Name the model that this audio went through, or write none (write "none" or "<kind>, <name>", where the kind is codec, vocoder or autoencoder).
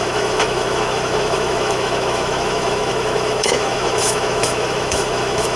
autoencoder, DAC-VAE